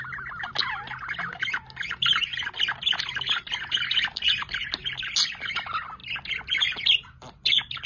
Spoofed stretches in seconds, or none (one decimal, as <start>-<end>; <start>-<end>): none